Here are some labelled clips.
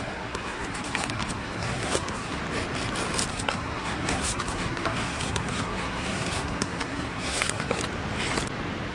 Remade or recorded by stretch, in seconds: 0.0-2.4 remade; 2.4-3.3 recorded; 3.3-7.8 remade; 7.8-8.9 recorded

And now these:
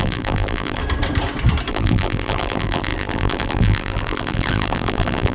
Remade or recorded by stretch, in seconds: 0.0-0.8 remade; 0.8-1.7 recorded; 1.7-5.3 remade

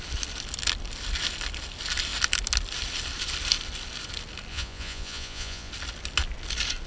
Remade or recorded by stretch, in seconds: 0.0-4.5 recorded; 4.5-5.7 remade; 5.7-6.9 recorded

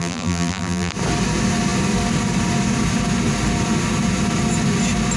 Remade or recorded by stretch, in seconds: 0.0-0.9 remade; 0.9-5.2 recorded

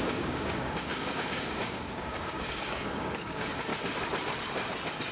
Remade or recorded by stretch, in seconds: 0.0-3.7 remade; 3.7-5.1 recorded

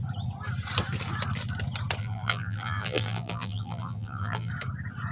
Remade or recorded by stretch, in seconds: 0.0-2.0 recorded; 2.0-4.5 remade; 4.5-5.1 recorded

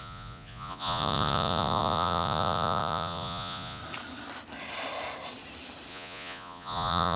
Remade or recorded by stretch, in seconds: 0.0-3.8 remade; 3.8-5.9 recorded; 5.9-7.2 remade